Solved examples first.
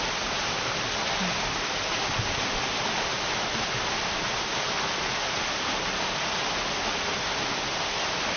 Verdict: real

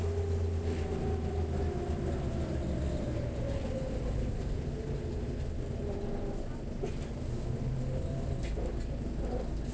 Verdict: real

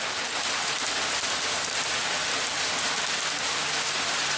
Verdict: real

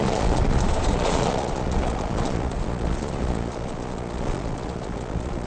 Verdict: fake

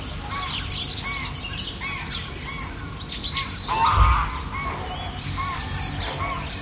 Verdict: real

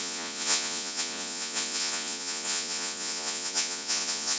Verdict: fake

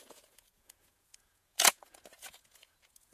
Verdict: fake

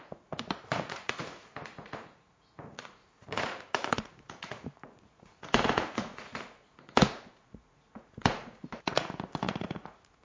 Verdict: fake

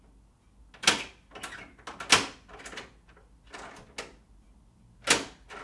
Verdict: real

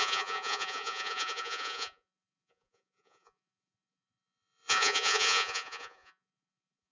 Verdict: fake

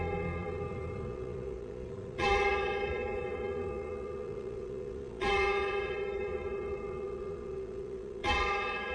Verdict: fake